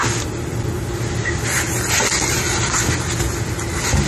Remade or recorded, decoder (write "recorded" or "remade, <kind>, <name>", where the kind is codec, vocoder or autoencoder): recorded